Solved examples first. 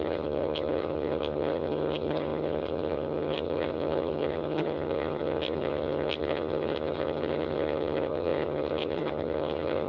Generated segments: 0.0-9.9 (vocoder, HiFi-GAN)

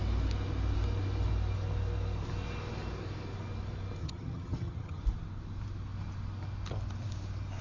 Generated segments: 4.0-5.0 (vocoder, HiFi-GAN)

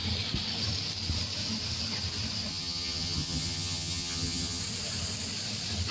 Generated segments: 2.5-4.6 (vocoder, HiFi-GAN)

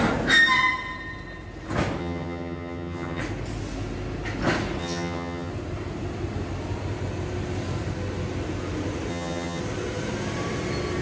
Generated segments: 2.0-3.2 (vocoder, HiFi-GAN); 4.8-5.5; 9.1-9.6

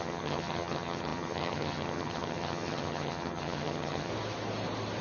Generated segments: 0.0-4.1 (vocoder, HiFi-GAN)

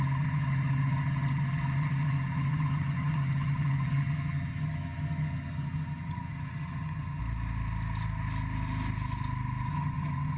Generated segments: 0.0-7.2 (vocoder, HiFi-GAN); 9.7-10.4

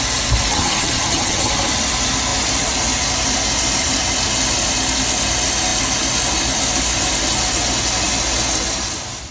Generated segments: 0.5-1.5 (vocoder, HiFi-GAN)